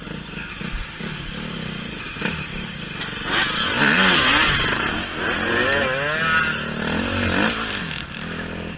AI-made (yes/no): no